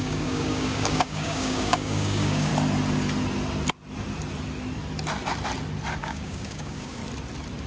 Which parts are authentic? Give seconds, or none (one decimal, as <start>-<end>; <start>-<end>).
2.5-6.0; 7.0-7.7